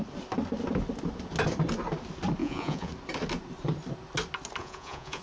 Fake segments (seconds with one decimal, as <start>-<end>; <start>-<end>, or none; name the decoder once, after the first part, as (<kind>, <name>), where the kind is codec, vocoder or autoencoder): 2.4-2.9 (vocoder, Vocos); 4.6-5.2